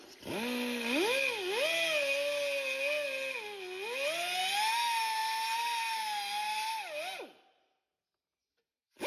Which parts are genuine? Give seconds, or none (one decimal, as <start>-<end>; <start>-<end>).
0.0-9.1